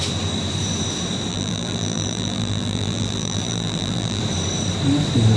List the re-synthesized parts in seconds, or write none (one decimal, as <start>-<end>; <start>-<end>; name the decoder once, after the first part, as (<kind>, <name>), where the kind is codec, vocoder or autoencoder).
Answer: 1.3-4.2 (vocoder, BigVGAN v2)